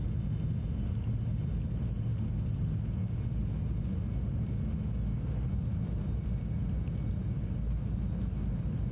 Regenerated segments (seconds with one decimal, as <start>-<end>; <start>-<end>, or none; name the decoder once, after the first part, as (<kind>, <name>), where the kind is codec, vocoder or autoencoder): none

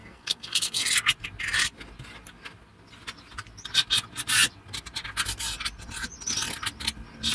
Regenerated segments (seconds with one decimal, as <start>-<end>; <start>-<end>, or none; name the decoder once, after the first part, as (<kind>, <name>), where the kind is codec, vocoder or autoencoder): 0.0-0.9 (codec, SNAC)

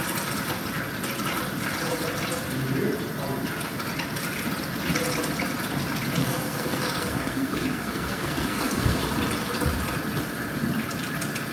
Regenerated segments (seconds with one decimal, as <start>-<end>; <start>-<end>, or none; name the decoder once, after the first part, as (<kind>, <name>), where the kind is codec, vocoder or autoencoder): 6.2-9.0 (codec, SNAC)

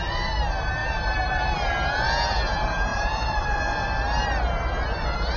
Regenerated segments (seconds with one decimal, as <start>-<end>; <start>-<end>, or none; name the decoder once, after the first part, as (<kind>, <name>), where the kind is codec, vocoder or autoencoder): 0.8-1.7 (vocoder, BigVGAN v2); 2.9-4.5